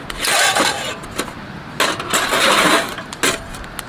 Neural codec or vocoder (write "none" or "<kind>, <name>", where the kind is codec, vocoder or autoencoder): none